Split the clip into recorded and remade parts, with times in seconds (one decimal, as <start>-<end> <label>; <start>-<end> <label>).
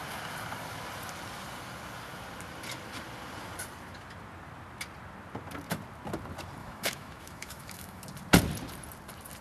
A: 0.0-6.6 recorded; 6.6-8.0 remade; 8.0-9.4 recorded